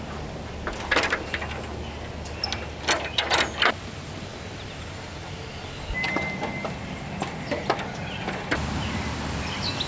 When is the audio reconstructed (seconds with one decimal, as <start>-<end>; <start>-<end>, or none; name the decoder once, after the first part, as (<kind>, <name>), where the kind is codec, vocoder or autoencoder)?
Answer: none